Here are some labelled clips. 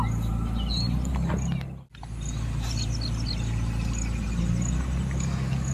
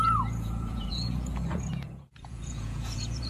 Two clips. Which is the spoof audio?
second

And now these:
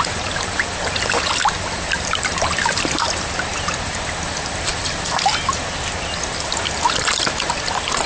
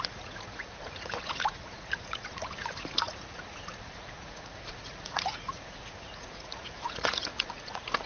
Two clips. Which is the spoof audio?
second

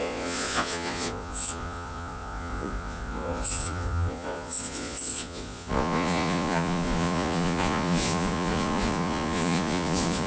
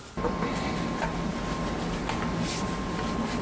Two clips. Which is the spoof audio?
first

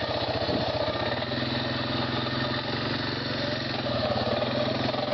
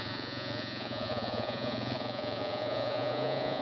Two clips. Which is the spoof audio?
second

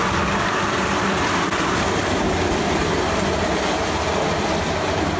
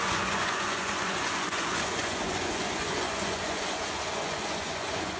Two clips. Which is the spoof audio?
second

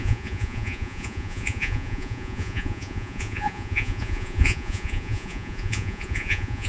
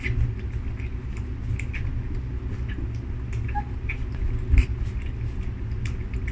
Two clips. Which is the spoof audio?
first